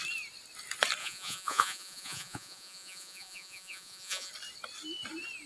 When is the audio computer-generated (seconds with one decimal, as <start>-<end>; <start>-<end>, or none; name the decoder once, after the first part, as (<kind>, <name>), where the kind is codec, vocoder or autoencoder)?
1.0-4.3 (vocoder, Vocos)